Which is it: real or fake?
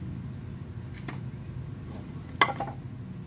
real